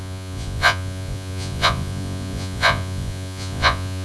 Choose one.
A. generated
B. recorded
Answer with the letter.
A